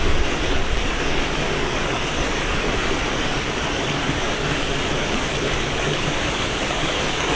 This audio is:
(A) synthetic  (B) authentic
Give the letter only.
A